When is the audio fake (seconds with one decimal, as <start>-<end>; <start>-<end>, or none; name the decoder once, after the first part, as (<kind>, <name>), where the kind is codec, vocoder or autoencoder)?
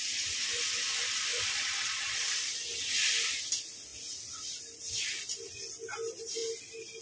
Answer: 1.3-2.6 (vocoder, Vocos)